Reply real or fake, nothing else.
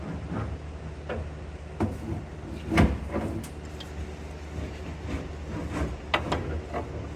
real